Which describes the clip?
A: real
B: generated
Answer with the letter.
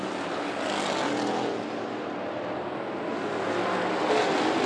A